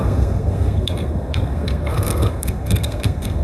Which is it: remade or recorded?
remade